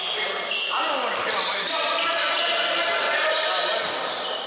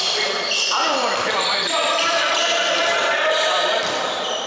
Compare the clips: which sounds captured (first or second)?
first